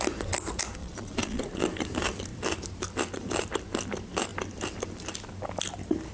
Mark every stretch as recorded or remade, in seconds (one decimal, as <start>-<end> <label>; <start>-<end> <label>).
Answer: 0.0-0.8 recorded; 0.8-1.4 remade; 1.4-6.1 recorded